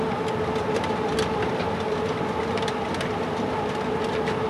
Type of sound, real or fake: real